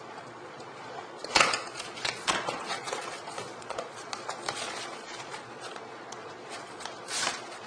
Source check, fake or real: fake